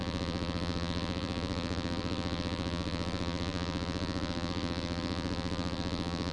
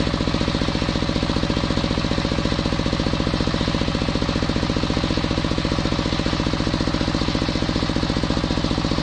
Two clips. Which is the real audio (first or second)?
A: second